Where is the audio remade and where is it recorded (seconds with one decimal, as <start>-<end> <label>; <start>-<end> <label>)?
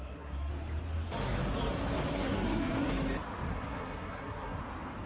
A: 0.0-0.5 remade; 0.5-2.1 recorded; 2.1-2.9 remade; 2.9-3.5 recorded; 3.5-4.6 remade; 4.6-5.1 recorded